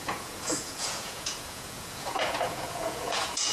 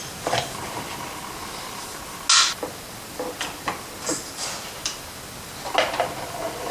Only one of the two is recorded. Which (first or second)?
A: second